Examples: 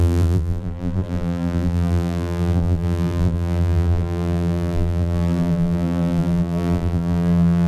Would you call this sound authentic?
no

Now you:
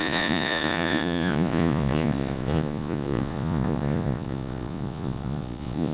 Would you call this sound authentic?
no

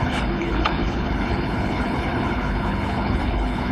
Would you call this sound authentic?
no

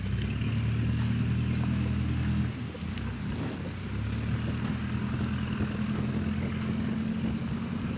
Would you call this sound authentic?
yes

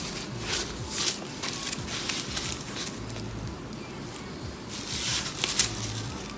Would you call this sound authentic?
yes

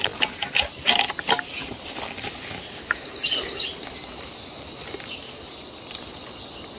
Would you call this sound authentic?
yes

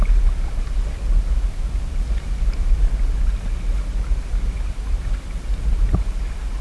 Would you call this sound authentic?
yes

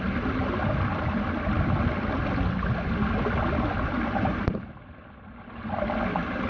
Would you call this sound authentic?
yes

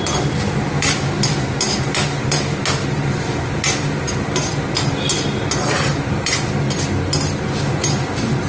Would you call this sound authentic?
yes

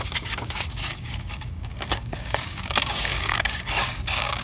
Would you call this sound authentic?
no